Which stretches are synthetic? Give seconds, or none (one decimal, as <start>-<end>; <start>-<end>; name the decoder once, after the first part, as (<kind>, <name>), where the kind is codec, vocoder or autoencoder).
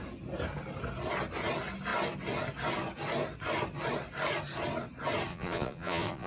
5.3-6.3 (vocoder, Vocos)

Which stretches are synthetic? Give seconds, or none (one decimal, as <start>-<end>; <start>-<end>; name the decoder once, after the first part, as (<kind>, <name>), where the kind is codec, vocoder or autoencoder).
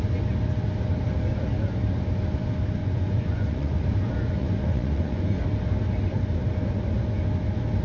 2.8-3.8 (vocoder, Vocos); 4.4-5.4